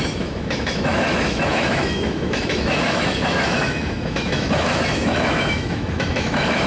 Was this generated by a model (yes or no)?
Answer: yes